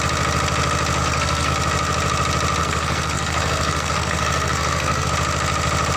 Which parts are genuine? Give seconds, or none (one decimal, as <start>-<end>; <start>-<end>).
0.0-1.0; 1.5-2.6; 5.1-6.0